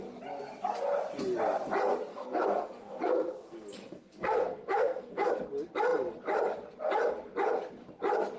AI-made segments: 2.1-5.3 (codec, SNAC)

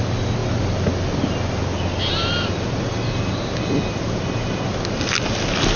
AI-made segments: none

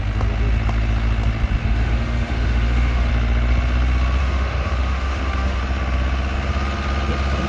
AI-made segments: 1.6-3.1 (autoencoder, DAC-VAE); 4.2-5.6

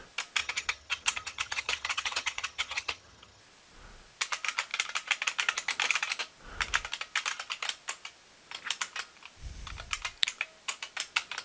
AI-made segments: 0.4-3.4 (vocoder, HiFi-GAN)

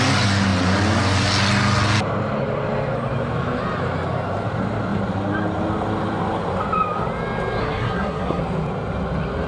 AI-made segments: 7.6-8.4 (codec, SNAC)

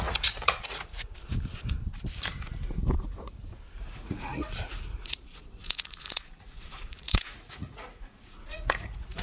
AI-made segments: 0.0-1.3 (vocoder, Vocos); 3.8-9.2

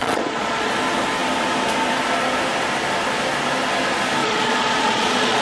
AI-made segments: 0.0-0.7 (vocoder, Vocos); 4.2-5.4